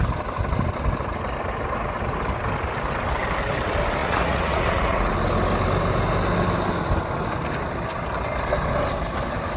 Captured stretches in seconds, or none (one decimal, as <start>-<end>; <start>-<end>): 0.0-4.0; 5.1-9.6